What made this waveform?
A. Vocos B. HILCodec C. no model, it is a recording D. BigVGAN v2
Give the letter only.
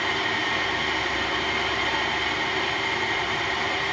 D